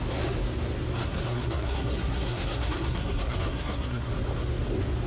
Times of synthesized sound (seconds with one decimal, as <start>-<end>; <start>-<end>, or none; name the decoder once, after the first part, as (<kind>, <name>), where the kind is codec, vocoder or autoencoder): 1.0-4.1 (codec, SNAC)